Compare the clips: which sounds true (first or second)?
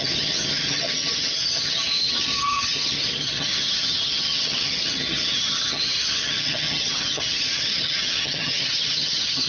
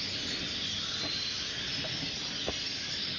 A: second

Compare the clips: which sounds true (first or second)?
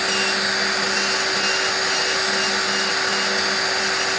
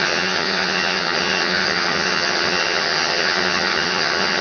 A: first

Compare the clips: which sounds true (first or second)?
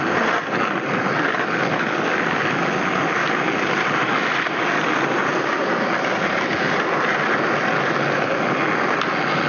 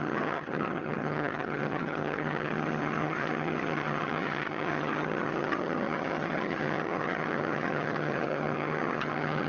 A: first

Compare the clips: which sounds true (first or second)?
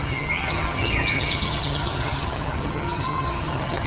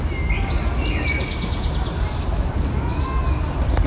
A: second